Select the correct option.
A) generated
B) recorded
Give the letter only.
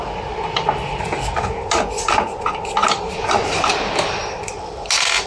B